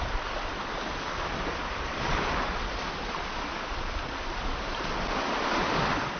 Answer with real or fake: fake